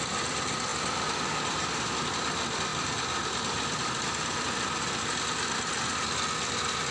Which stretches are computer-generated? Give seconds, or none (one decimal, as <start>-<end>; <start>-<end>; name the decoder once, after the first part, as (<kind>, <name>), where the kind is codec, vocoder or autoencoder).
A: none